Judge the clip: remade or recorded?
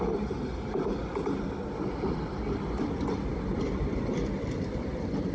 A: recorded